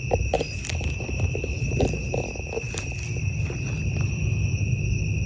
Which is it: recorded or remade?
recorded